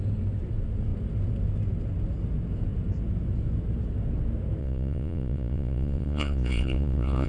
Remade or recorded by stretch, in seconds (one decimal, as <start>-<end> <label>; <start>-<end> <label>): 0.0-4.6 recorded; 4.6-7.3 remade